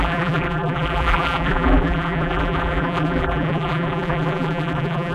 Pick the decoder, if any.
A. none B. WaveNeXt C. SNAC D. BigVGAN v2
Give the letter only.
D